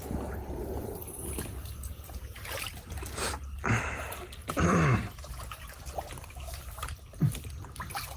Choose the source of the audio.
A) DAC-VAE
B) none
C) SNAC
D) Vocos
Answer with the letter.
B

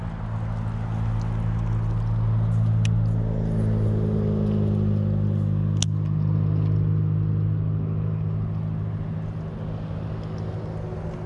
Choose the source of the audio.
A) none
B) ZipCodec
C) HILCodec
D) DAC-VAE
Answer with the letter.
A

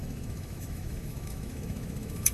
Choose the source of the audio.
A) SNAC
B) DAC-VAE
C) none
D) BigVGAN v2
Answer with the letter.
B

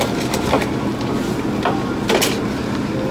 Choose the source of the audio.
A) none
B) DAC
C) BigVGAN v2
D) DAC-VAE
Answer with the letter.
A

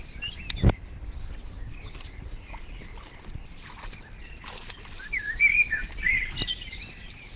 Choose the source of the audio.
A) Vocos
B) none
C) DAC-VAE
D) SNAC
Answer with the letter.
B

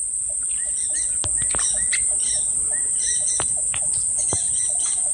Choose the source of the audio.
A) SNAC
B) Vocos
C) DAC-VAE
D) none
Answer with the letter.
D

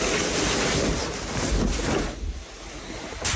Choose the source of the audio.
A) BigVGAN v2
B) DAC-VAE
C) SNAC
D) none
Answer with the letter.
D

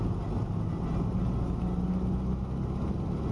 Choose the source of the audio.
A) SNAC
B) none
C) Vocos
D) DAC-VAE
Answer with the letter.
B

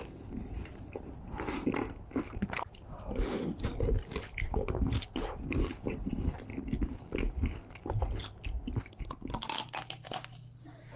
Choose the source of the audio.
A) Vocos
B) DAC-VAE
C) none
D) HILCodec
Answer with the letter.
C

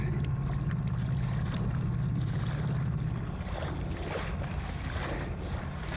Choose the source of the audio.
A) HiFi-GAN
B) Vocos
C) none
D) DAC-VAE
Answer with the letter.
C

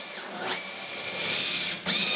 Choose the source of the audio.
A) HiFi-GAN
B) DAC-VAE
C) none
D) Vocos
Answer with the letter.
C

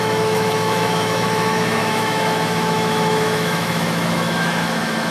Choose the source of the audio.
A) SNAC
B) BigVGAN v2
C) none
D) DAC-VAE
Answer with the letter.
D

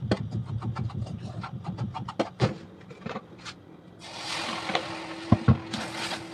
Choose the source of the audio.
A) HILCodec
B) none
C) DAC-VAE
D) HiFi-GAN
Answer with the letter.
B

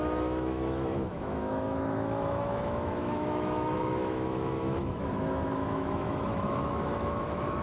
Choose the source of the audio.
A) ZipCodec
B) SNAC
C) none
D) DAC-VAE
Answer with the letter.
D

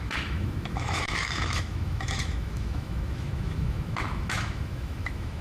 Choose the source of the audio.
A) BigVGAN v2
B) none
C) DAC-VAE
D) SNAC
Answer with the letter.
C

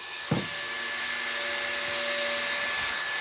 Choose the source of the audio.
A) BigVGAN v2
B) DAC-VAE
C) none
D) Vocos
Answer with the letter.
C